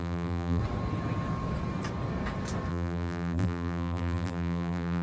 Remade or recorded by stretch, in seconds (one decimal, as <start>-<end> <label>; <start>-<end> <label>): 0.0-0.6 remade; 0.6-2.7 recorded; 2.7-5.0 remade

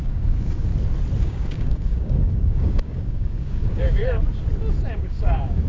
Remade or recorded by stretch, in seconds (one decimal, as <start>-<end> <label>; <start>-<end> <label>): 0.0-0.7 remade; 0.7-1.2 recorded; 1.2-4.0 remade; 4.0-4.9 recorded; 4.9-5.7 remade

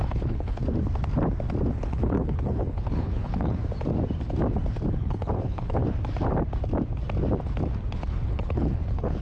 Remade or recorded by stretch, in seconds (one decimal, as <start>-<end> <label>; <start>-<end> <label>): 0.0-0.6 remade; 0.6-1.8 recorded; 1.8-3.6 remade; 3.6-4.9 recorded; 4.9-5.8 remade; 5.8-7.9 recorded; 7.9-9.2 remade

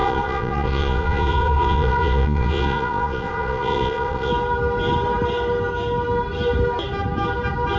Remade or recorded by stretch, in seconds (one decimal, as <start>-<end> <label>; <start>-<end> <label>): 0.0-4.3 remade; 4.3-7.8 recorded

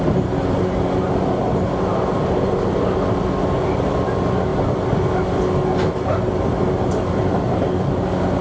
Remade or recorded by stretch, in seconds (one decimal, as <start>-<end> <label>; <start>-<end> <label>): 0.0-8.4 recorded

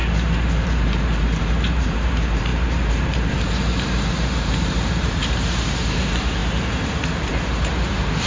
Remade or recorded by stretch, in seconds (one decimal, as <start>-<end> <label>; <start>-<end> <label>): 0.0-6.4 remade; 6.4-7.3 recorded; 7.3-8.3 remade

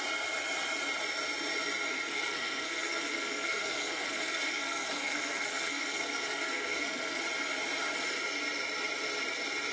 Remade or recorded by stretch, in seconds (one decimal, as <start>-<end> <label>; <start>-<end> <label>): 0.0-2.1 recorded; 2.1-7.2 remade; 7.2-9.7 recorded

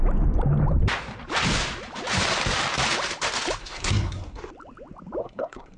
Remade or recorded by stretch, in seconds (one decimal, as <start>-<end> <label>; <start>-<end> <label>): 0.0-3.6 recorded; 3.6-4.5 remade; 4.5-5.2 recorded; 5.2-5.8 remade